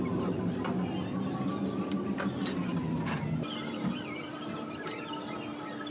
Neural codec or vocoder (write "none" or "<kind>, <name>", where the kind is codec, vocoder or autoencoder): none